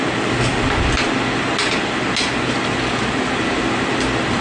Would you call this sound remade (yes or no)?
no